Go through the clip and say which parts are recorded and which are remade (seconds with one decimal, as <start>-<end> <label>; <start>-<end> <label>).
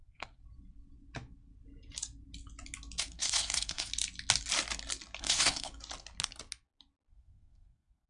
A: 0.0-0.4 remade; 0.4-3.0 recorded; 3.0-3.9 remade; 3.9-5.2 recorded; 5.2-5.7 remade; 5.7-7.1 recorded; 7.1-8.1 remade